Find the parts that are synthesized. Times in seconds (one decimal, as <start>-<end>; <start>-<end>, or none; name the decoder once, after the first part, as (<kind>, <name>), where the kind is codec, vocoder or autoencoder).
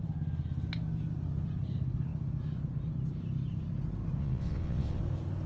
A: 4.2-5.0 (vocoder, WaveNeXt)